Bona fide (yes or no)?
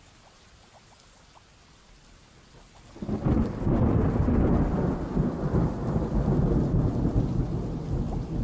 yes